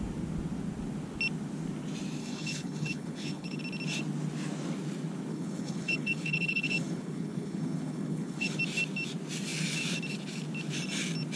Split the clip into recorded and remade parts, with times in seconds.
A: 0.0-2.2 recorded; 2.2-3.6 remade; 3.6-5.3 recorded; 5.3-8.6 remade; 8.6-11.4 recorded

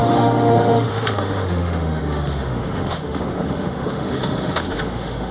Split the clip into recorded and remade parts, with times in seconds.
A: 0.0-5.3 remade

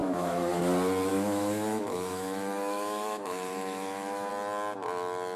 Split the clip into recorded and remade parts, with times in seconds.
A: 0.0-0.6 remade; 0.6-1.1 recorded; 1.1-4.3 remade; 4.3-5.4 recorded

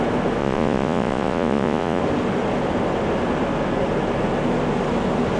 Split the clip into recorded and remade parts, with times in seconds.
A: 0.0-0.4 recorded; 0.4-2.0 remade; 2.0-5.4 recorded